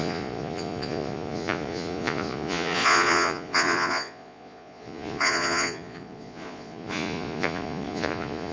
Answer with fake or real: fake